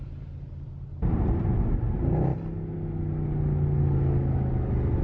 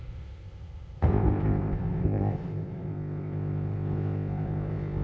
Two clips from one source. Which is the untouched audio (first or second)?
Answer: first